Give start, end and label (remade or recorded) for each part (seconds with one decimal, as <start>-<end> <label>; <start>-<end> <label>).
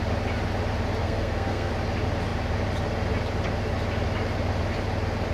0.0-1.0 recorded; 1.0-1.7 remade; 1.7-5.3 recorded